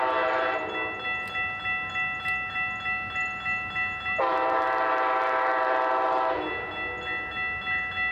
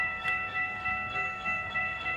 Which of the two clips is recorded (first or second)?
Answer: first